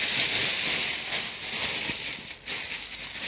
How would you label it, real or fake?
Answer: real